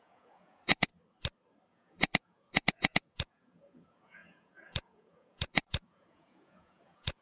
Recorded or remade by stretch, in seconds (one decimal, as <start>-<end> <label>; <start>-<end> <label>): 0.0-0.9 remade; 0.9-1.7 recorded; 1.7-7.2 remade